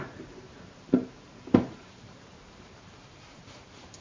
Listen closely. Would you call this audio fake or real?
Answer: fake